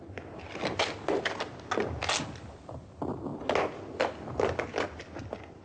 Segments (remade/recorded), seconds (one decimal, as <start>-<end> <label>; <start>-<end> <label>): 0.0-5.6 recorded